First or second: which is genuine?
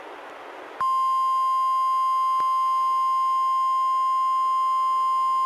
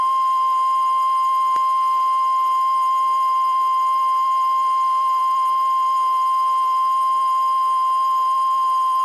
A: first